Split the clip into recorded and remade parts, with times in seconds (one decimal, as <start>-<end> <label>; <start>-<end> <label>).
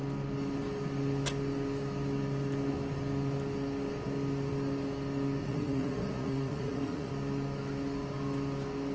0.0-5.4 recorded; 5.4-7.1 remade; 7.1-8.9 recorded